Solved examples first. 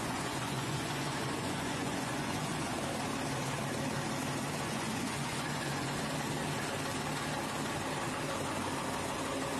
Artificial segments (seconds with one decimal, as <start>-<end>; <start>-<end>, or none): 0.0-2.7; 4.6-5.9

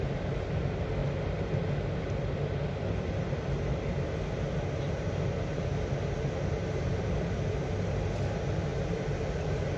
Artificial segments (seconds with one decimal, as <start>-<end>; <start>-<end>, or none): none

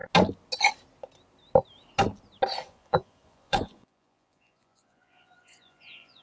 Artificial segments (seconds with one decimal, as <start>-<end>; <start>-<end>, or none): 2.7-6.2